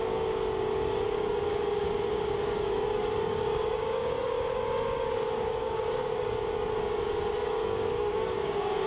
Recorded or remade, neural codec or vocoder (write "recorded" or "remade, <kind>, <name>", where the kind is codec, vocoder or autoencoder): remade, codec, DAC